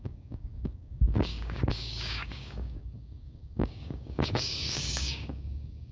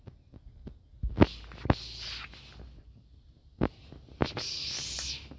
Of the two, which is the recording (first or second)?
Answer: second